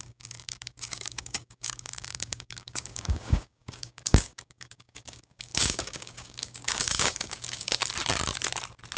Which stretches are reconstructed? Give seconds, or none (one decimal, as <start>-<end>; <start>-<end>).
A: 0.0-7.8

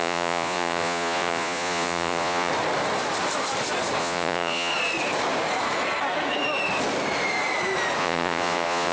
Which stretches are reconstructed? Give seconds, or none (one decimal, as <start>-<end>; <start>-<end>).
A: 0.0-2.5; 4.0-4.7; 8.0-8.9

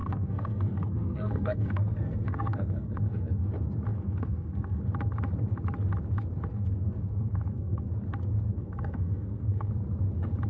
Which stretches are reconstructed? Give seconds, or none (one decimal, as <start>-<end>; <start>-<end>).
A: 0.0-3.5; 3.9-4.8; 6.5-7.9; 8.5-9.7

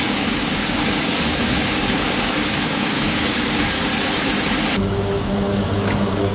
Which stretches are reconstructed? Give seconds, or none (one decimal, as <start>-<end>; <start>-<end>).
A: 0.0-3.9; 4.8-6.3